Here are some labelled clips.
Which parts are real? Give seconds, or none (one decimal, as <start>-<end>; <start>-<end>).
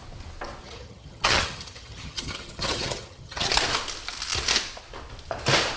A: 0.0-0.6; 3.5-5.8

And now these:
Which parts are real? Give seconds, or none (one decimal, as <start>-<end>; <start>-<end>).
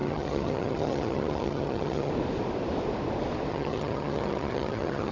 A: 2.1-3.5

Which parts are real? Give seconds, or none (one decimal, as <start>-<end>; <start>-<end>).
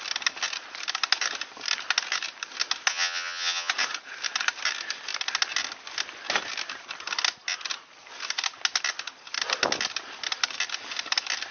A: 0.0-2.9; 3.7-11.5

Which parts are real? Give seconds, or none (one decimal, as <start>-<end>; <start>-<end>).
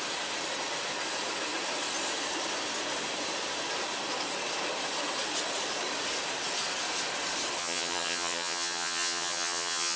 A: 0.0-7.6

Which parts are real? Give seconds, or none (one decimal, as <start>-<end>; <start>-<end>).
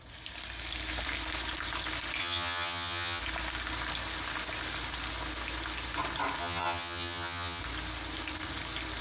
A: 0.0-2.2; 3.2-6.4; 7.6-9.0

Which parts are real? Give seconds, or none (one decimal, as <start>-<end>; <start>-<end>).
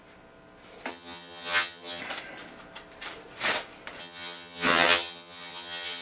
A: 0.0-0.9; 2.0-4.0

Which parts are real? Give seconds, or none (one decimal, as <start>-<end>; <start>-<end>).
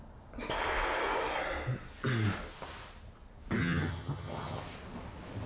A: 0.0-3.6; 4.6-5.5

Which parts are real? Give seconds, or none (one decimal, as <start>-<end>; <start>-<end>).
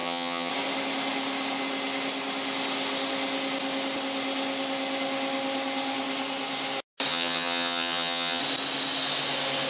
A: 0.5-7.1; 8.4-9.7